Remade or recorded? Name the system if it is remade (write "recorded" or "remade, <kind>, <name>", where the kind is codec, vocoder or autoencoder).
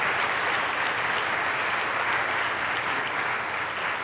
recorded